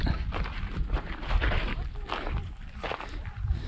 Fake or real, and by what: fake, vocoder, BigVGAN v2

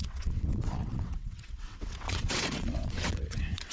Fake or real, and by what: fake, vocoder, WaveNeXt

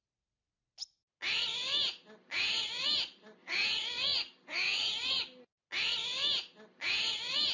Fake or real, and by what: real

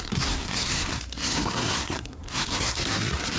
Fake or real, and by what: fake, codec, SNAC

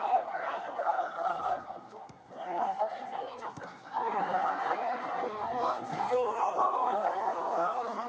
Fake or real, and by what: fake, codec, SNAC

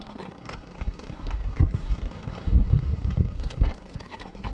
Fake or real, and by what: fake, codec, SNAC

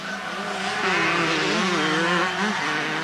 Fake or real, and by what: real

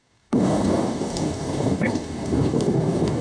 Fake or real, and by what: fake, codec, DAC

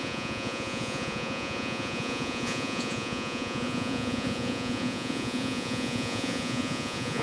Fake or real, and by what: fake, vocoder, Vocos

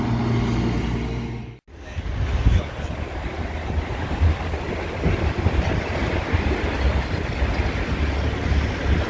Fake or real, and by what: real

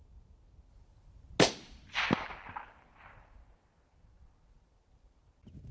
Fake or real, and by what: real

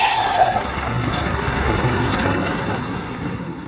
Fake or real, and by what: fake, codec, SNAC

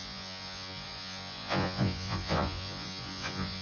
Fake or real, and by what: fake, vocoder, Vocos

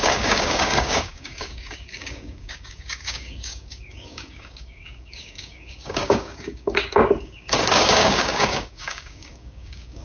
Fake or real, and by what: fake, codec, DAC